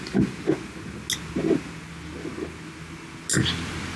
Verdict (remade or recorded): recorded